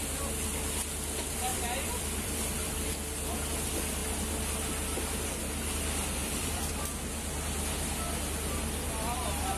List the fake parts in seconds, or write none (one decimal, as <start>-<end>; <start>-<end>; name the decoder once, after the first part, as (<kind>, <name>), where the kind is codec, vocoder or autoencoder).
1.5-2.7 (vocoder, BigVGAN v2); 6.2-6.7

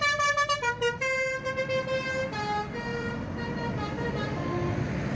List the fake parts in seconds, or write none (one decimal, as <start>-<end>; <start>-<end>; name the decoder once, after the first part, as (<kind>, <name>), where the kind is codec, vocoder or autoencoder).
2.9-4.1 (vocoder, BigVGAN v2)

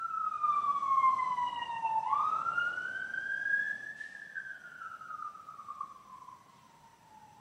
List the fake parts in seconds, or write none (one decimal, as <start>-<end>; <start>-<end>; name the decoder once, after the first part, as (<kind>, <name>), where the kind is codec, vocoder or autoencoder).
0.0-0.7 (vocoder, BigVGAN v2); 2.6-3.1; 4.8-7.4

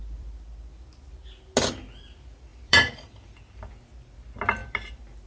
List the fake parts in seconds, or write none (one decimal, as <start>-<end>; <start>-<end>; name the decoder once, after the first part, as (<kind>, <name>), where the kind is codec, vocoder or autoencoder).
0.0-0.9 (vocoder, BigVGAN v2); 2.5-3.7; 4.6-5.3